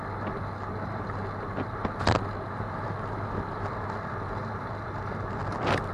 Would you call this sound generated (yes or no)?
no